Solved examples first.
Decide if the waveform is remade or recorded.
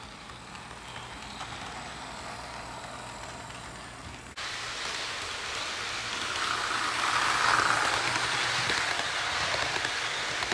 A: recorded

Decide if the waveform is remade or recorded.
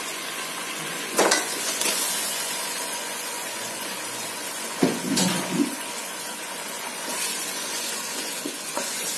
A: remade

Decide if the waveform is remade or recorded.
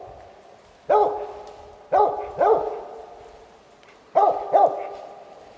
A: recorded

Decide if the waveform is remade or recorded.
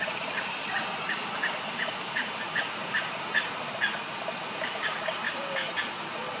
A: remade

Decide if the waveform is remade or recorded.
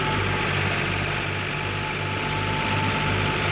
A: recorded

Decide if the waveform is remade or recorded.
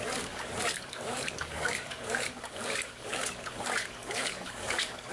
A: remade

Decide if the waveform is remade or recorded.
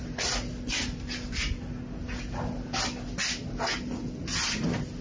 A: recorded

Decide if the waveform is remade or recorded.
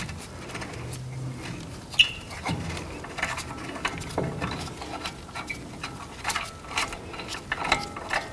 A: recorded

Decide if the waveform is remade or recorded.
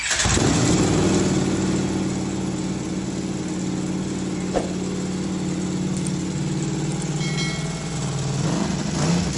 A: recorded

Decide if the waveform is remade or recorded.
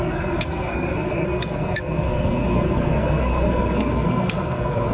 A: remade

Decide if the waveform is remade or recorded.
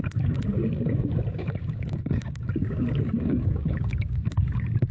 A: remade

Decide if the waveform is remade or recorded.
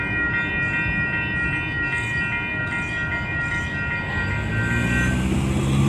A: recorded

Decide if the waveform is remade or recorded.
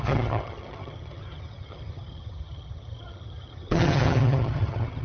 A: remade